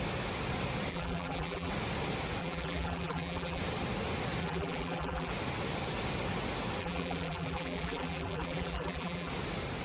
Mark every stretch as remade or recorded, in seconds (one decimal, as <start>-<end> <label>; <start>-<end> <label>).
0.0-0.9 recorded; 0.9-1.7 remade; 1.7-2.4 recorded; 2.4-3.6 remade; 3.6-4.4 recorded; 4.4-5.3 remade; 5.3-6.8 recorded; 6.8-9.3 remade; 9.3-9.8 recorded